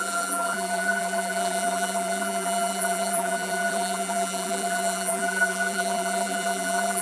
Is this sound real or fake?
fake